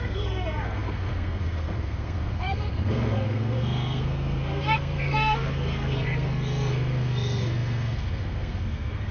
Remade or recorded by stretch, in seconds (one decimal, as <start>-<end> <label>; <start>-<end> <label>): 0.0-9.1 remade